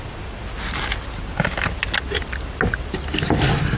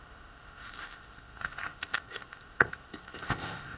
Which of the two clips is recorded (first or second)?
first